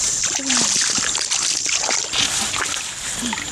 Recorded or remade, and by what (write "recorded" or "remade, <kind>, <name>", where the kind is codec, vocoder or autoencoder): recorded